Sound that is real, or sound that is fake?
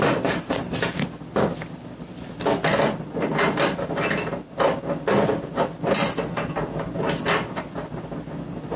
real